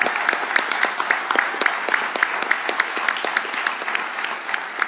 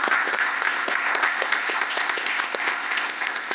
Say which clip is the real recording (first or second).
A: first